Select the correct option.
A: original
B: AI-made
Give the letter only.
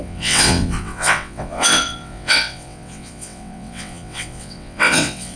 B